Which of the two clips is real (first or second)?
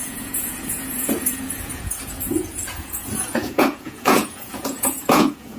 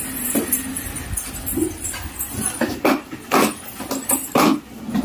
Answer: second